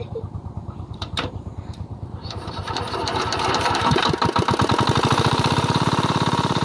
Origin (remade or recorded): remade